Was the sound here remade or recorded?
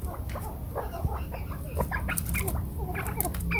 recorded